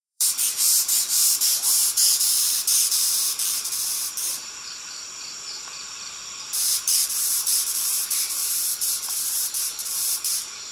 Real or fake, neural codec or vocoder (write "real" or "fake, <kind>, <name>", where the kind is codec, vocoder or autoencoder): fake, vocoder, BigVGAN v2